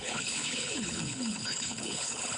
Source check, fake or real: fake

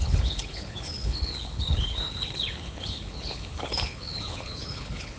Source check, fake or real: fake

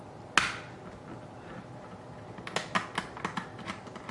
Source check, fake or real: real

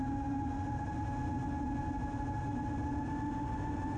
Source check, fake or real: real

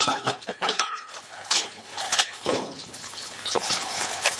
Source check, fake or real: fake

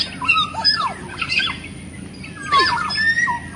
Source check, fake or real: real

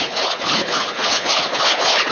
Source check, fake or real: fake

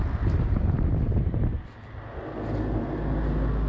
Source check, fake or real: real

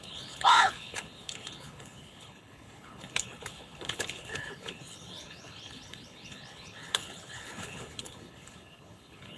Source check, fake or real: fake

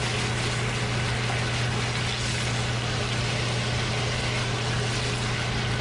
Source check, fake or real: real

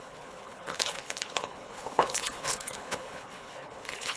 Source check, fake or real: fake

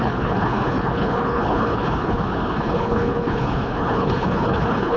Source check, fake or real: fake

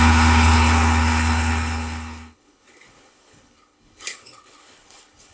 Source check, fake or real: fake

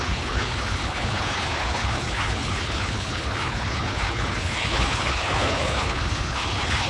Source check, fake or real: fake